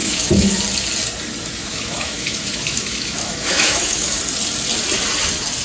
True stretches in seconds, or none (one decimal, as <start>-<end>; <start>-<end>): 0.6-1.6; 4.2-5.6